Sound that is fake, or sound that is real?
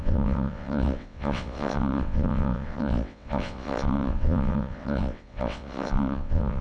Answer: fake